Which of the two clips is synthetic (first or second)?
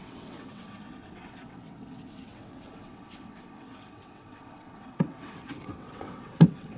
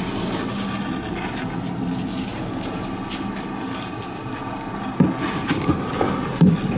first